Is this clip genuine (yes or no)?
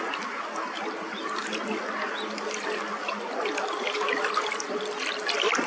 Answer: yes